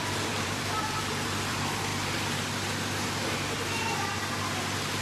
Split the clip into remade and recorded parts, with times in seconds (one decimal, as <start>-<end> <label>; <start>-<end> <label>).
0.0-1.9 remade; 1.9-5.0 recorded